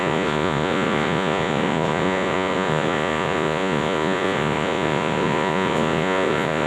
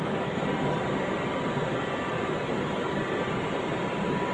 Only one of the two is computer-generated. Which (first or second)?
first